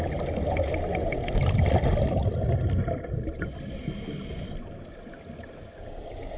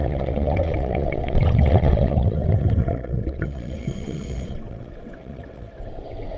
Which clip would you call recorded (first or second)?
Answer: first